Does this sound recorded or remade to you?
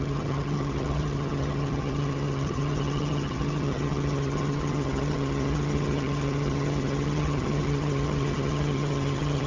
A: remade